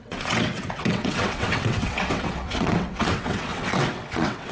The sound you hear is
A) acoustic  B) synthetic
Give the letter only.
B